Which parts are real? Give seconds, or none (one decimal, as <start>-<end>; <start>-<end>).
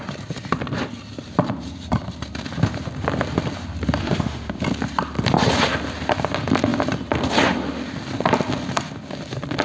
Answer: 0.0-4.0; 4.6-9.6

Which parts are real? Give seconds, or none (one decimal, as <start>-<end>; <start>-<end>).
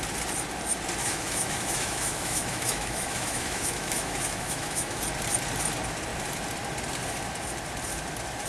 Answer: 0.0-1.0; 5.0-8.5